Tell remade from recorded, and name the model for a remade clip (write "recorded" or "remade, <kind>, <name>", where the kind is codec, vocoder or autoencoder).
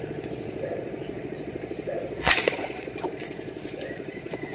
remade, vocoder, Vocos